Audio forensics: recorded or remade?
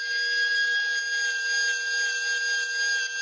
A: recorded